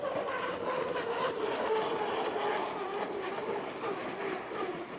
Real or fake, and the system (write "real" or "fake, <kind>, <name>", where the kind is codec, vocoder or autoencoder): real